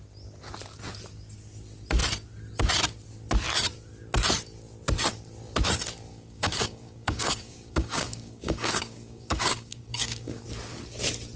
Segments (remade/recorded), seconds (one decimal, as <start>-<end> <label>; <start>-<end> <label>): 0.0-6.1 recorded; 6.1-10.4 remade; 10.4-11.4 recorded